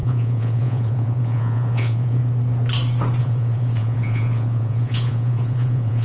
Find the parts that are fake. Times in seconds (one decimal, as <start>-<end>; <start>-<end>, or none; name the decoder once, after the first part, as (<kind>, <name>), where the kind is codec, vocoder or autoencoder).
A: 0.0-2.2 (vocoder, Vocos); 3.2-6.0